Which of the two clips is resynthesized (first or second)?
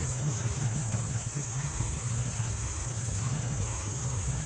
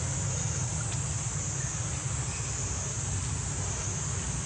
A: first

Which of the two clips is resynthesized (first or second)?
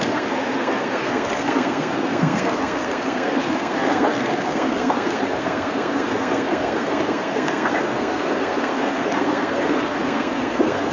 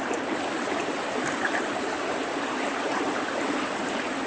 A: first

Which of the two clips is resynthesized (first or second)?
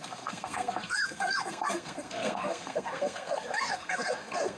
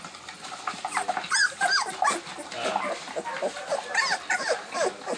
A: first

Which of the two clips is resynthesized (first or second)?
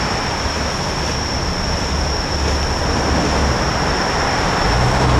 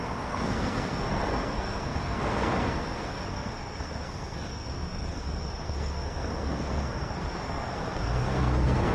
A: second